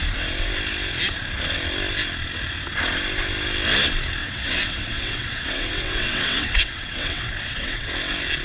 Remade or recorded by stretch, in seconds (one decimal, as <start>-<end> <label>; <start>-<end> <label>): 0.0-4.2 recorded; 4.2-7.9 remade; 7.9-8.4 recorded